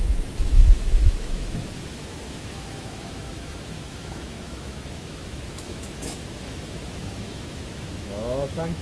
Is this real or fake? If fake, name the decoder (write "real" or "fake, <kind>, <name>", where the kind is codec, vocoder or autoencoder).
fake, autoencoder, DAC-VAE